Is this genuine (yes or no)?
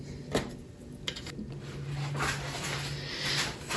yes